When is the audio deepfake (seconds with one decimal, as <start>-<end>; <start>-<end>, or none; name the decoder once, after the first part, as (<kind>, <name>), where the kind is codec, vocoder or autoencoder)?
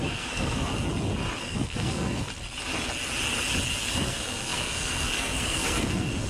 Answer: 0.0-0.9 (codec, SNAC); 1.4-2.3; 3.8-6.3